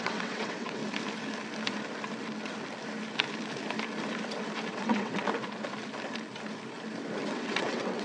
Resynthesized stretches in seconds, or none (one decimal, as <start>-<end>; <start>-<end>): 0.0-0.8; 4.7-5.2; 7.3-8.0